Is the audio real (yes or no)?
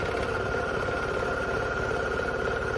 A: yes